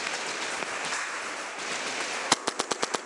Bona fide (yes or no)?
yes